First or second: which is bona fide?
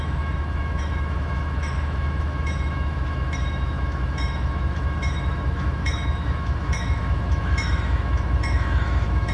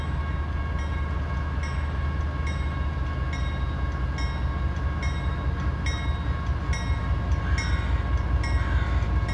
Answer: second